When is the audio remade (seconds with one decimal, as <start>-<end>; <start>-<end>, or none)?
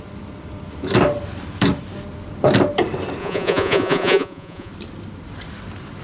3.2-4.7